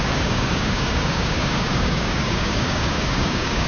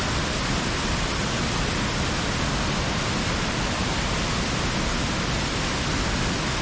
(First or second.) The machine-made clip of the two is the first